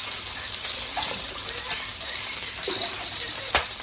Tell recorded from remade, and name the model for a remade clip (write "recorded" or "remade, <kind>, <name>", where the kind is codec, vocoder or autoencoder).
remade, vocoder, BigVGAN v2